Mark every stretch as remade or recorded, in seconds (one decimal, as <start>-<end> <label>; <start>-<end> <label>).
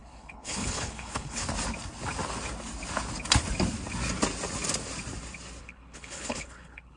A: 0.0-1.4 remade; 1.4-5.6 recorded; 5.6-7.0 remade